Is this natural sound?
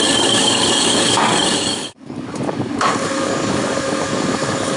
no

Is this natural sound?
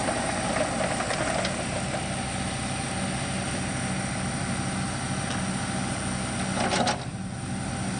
yes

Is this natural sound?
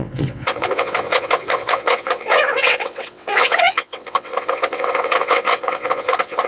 no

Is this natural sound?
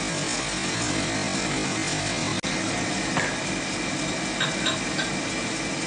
yes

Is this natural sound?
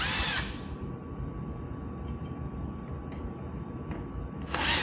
yes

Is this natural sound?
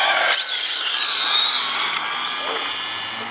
yes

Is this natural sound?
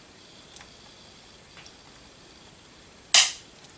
yes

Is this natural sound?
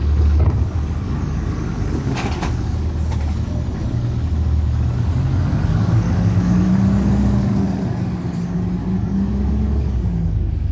no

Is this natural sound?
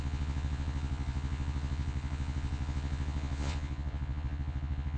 no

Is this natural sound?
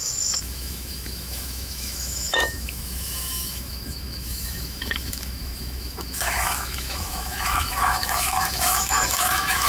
no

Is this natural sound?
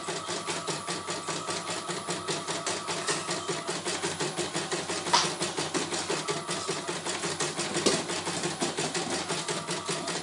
yes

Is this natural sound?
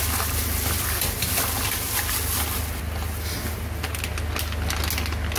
yes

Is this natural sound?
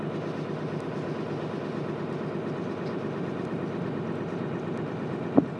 yes